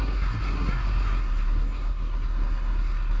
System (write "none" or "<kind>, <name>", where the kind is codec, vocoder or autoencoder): codec, SNAC